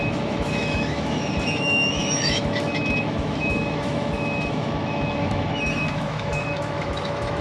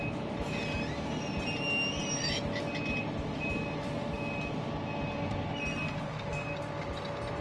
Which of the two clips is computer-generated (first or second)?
first